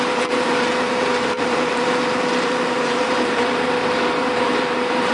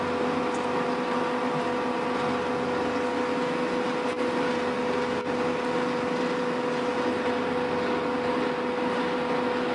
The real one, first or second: second